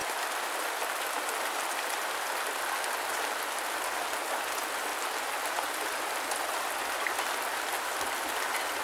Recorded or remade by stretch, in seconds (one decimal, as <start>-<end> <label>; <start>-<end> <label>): 0.0-8.8 recorded